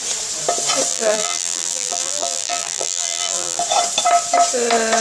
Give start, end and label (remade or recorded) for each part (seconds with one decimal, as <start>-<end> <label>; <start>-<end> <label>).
0.0-0.9 recorded; 0.9-3.6 remade; 3.6-5.0 recorded